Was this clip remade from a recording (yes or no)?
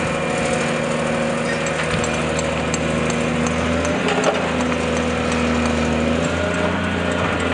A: no